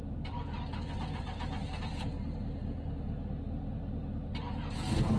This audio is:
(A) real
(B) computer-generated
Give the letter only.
A